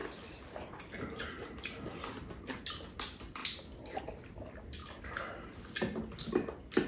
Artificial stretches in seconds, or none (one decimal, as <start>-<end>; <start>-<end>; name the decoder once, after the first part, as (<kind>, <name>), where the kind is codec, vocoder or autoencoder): none